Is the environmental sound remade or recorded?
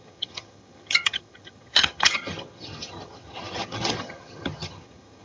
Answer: remade